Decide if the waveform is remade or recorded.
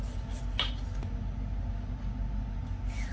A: recorded